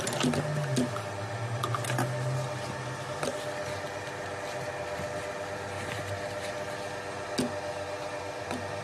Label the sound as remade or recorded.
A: recorded